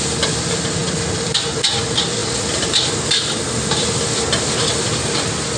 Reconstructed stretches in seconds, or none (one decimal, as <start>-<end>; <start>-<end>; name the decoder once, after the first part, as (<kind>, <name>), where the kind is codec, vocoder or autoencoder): none